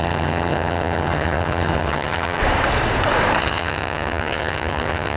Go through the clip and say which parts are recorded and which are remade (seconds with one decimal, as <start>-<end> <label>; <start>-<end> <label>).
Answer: 0.0-2.4 remade; 2.4-3.4 recorded; 3.4-5.2 remade